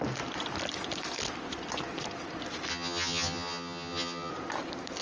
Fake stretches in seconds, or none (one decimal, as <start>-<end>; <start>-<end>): 2.7-4.3